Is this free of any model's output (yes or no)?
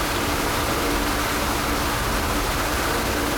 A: yes